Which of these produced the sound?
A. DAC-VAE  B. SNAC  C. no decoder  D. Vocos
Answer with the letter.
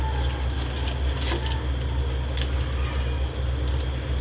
C